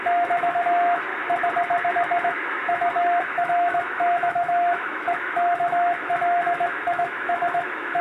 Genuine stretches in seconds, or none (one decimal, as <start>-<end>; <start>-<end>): 1.1-1.9

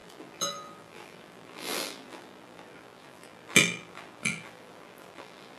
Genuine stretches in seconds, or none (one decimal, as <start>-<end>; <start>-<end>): none